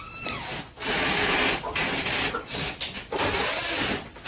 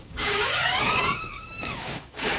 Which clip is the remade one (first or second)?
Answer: second